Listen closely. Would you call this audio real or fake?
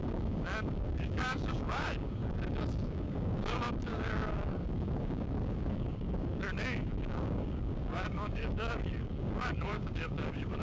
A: fake